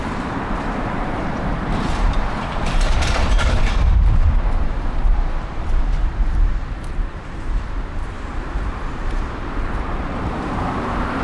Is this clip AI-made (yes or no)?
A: yes